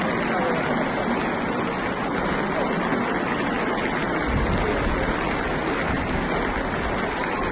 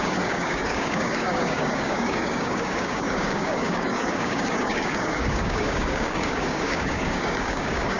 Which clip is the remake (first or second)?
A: second